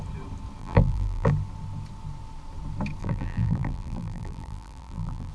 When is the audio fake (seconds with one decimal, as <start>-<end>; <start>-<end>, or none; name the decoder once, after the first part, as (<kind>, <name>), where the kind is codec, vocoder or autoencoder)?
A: 0.6-1.3 (vocoder, BigVGAN v2); 3.0-5.3